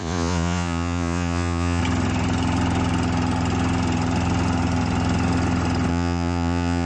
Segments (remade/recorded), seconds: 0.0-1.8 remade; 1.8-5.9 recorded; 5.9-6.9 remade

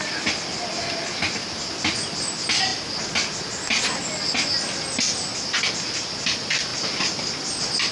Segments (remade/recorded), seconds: 0.0-7.9 recorded

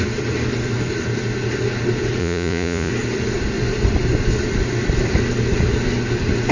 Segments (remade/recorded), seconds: 0.0-2.2 recorded; 2.2-2.9 remade; 2.9-6.5 recorded

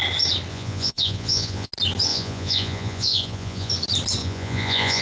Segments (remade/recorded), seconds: 0.0-0.5 recorded; 0.5-1.7 remade; 1.7-2.1 recorded; 2.1-3.7 remade; 3.7-4.2 recorded; 4.2-5.0 remade